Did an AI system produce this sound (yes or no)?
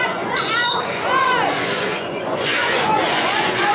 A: yes